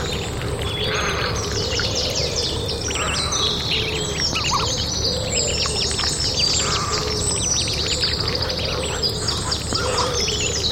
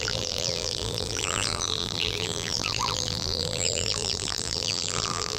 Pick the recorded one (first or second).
first